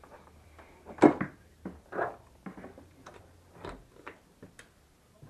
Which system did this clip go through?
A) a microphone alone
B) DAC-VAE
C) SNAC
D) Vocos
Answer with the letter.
A